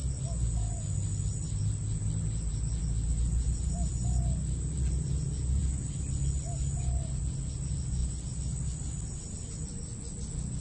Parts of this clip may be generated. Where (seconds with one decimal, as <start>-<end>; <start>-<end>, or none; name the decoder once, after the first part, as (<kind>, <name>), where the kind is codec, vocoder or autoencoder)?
none